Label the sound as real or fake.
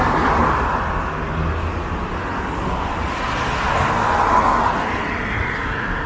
real